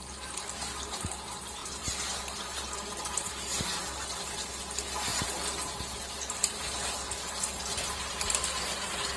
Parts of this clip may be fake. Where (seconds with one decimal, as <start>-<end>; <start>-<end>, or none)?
none